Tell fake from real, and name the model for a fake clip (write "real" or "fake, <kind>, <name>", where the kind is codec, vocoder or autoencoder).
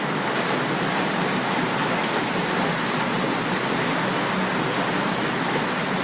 real